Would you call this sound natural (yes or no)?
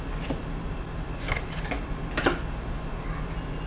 yes